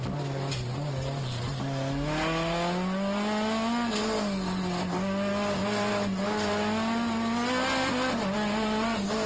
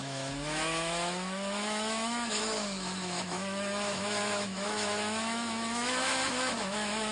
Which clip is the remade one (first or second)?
second